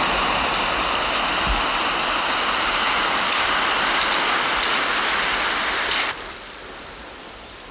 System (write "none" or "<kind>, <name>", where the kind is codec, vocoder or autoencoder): none